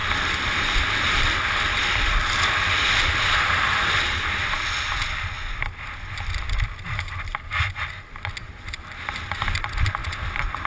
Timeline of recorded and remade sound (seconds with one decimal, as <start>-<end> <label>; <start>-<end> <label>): 0.0-0.8 remade; 0.8-10.7 recorded

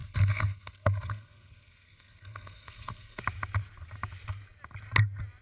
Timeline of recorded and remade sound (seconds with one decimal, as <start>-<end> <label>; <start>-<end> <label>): 0.0-3.2 remade; 3.2-5.4 recorded